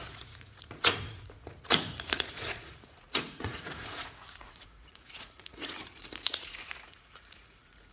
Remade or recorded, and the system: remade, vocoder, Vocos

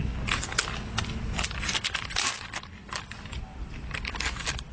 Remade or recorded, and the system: recorded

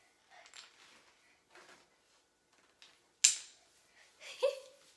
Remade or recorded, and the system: recorded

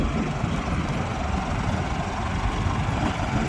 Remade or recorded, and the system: recorded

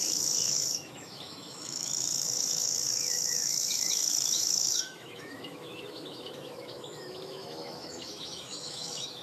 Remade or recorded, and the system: remade, autoencoder, DAC-VAE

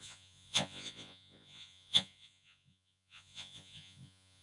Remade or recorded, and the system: remade, vocoder, Vocos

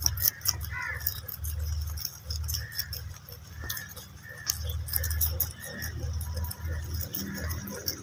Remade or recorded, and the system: recorded